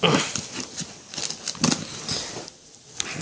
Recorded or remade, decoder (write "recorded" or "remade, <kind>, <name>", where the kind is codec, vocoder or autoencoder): recorded